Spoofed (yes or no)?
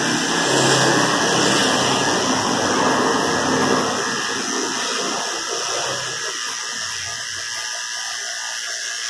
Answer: no